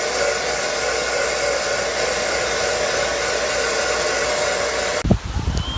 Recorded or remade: recorded